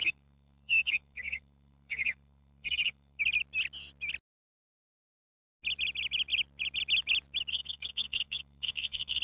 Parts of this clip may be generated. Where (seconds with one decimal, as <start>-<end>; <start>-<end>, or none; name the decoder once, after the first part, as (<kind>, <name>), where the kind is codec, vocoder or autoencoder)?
0.0-3.2 (codec, SNAC); 7.5-9.2